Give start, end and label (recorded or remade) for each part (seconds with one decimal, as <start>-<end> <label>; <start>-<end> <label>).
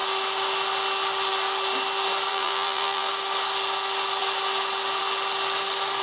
0.0-2.3 recorded; 2.3-3.1 remade; 3.1-6.0 recorded